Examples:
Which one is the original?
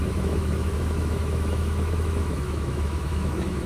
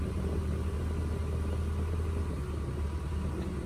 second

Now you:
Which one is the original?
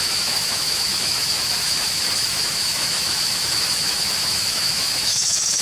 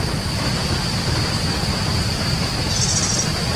second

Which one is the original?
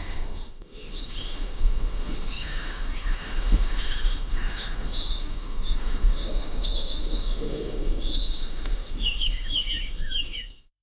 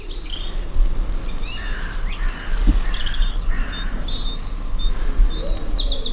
second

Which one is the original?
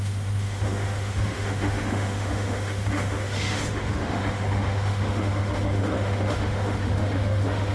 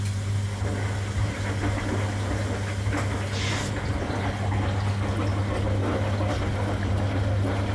second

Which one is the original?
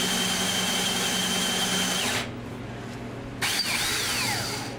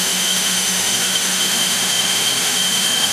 first